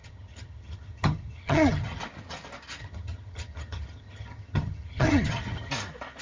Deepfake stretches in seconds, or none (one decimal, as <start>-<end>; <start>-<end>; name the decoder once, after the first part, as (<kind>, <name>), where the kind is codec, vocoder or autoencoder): 0.0-2.0 (vocoder, HiFi-GAN); 2.8-5.7